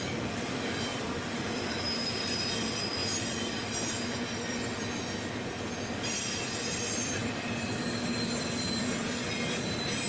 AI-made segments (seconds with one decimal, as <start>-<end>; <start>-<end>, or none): 0.0-3.0; 5.8-10.1